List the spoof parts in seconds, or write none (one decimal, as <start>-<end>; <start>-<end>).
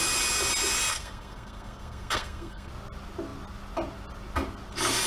0.9-2.7